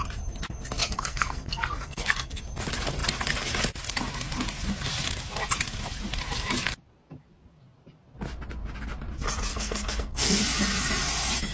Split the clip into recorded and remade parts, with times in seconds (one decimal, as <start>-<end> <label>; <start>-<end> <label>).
0.0-0.8 recorded; 0.8-2.4 remade; 2.4-9.5 recorded; 9.5-10.4 remade; 10.4-11.5 recorded